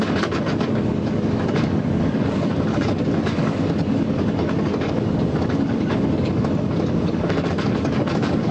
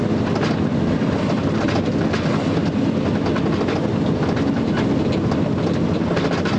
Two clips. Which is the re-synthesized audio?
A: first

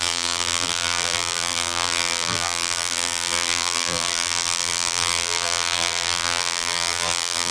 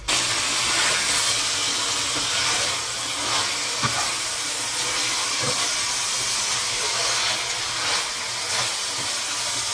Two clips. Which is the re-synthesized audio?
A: first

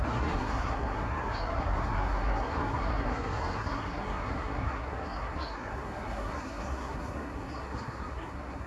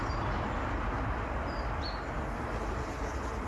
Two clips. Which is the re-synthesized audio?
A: first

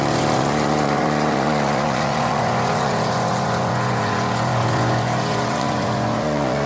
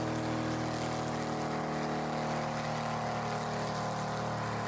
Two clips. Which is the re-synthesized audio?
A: first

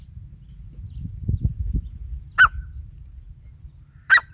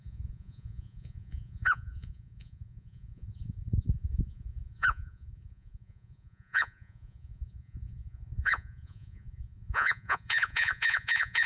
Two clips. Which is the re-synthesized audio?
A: second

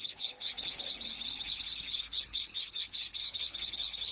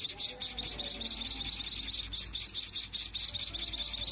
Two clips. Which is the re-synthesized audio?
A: first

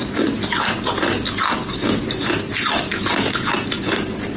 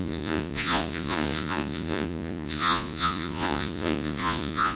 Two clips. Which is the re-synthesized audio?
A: second